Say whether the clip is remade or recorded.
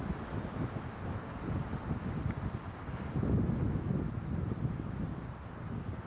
recorded